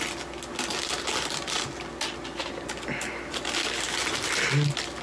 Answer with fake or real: real